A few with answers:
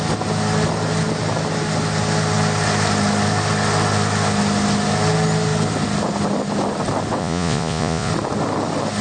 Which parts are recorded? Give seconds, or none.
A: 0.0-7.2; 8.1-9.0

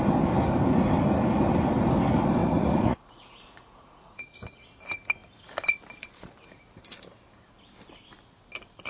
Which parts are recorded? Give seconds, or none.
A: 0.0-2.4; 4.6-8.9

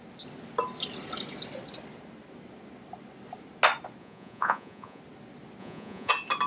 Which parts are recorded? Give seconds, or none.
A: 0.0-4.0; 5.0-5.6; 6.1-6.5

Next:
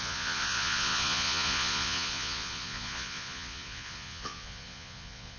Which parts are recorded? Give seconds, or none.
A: none